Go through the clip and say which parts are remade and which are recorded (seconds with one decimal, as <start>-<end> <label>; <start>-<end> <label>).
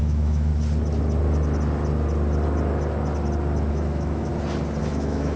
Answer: 0.0-0.5 remade; 0.5-3.7 recorded; 3.7-4.3 remade; 4.3-4.8 recorded; 4.8-5.4 remade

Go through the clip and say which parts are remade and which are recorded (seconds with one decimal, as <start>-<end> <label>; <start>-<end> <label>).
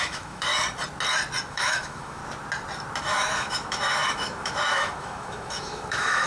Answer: 0.0-0.5 remade; 0.5-1.5 recorded; 1.5-2.2 remade; 2.2-3.0 recorded; 3.0-6.3 remade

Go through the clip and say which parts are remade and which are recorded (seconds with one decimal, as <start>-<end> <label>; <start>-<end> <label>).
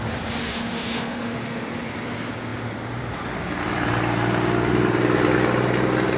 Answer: 0.0-0.4 recorded; 0.4-1.7 remade; 1.7-6.2 recorded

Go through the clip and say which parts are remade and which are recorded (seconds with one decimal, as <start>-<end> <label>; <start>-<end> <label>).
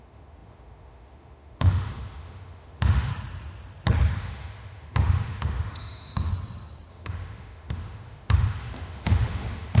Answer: 0.0-3.1 remade; 3.1-4.2 recorded; 4.2-6.3 remade; 6.3-6.9 recorded; 6.9-9.8 remade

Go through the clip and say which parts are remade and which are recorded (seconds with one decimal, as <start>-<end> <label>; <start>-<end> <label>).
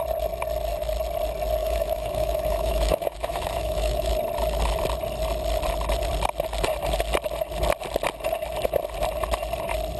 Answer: 0.0-1.6 recorded; 1.6-4.1 remade; 4.1-10.0 recorded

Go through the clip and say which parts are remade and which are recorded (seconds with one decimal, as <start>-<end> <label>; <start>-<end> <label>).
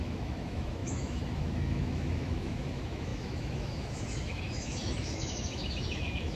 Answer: 0.0-6.4 remade